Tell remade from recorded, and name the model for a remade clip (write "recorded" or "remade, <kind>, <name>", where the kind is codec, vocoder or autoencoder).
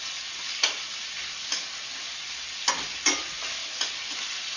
recorded